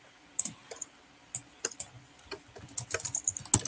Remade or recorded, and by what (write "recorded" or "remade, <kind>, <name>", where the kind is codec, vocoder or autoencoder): recorded